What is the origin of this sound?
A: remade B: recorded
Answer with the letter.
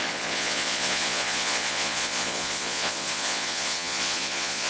A